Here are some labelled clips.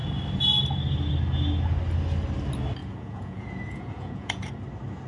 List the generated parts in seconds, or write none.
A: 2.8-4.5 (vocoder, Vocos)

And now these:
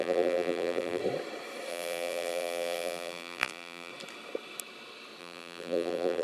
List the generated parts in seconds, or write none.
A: 0.0-1.0 (vocoder, BigVGAN v2); 1.7-3.9; 5.2-6.2

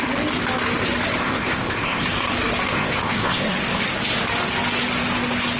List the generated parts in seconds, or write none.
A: 1.2-2.0 (codec, ZipCodec); 2.7-3.5

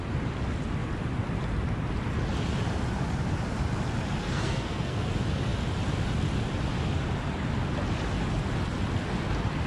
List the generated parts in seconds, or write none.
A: 4.2-5.1 (codec, SNAC)

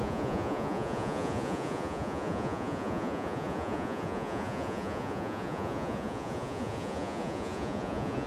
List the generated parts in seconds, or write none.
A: 0.0-8.3 (vocoder, Vocos)

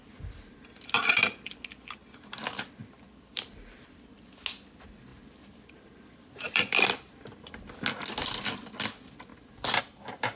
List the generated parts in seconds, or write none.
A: 2.8-4.0 (vocoder, BigVGAN v2); 5.1-7.5